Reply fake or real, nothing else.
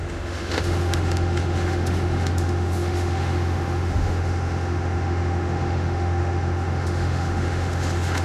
fake